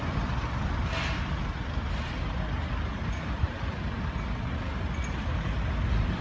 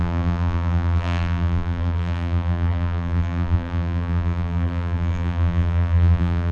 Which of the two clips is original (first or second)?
first